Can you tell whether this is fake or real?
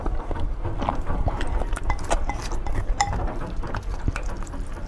real